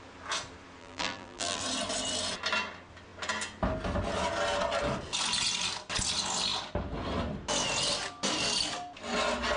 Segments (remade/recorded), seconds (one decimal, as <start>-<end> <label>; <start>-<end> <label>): 0.0-0.8 recorded; 0.8-1.6 remade; 1.6-9.6 recorded

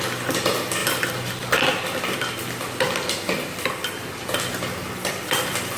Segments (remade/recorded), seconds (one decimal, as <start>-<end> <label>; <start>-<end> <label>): 0.0-5.8 recorded

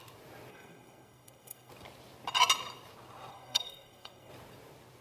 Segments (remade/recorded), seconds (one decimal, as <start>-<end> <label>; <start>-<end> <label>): 0.0-0.5 recorded; 0.5-1.7 remade; 1.7-3.3 recorded; 3.3-4.3 remade; 4.3-5.0 recorded

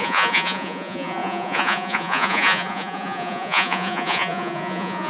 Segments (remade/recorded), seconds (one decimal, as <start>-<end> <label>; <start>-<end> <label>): 0.0-5.1 remade

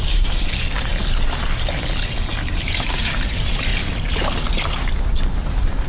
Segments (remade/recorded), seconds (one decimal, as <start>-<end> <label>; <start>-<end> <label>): 0.0-0.9 remade; 0.9-2.3 recorded; 2.3-3.7 remade; 3.7-5.0 recorded; 5.0-5.9 remade

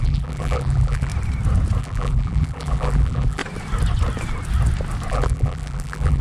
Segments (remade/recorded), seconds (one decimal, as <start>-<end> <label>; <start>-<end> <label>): 0.0-1.1 remade; 1.1-1.8 recorded; 1.8-3.4 remade; 3.4-5.1 recorded; 5.1-6.2 remade